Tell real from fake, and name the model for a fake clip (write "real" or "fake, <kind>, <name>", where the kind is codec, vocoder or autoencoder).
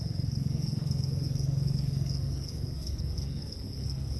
fake, codec, SNAC